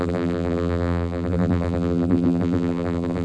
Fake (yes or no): yes